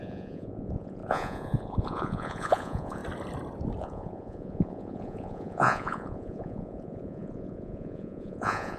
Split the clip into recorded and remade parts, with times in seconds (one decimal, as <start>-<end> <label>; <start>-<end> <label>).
0.0-3.0 remade; 3.0-3.8 recorded; 3.8-8.8 remade